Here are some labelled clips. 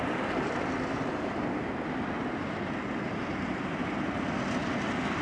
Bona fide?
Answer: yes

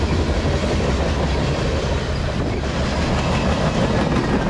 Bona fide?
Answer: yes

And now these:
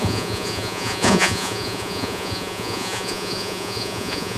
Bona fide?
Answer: no